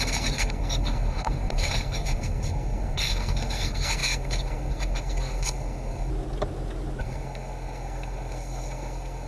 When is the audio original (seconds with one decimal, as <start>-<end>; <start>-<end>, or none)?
6.1-7.0